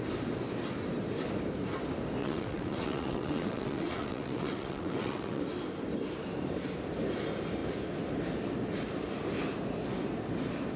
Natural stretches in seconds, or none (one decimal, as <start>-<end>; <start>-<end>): 0.0-2.2; 5.4-10.8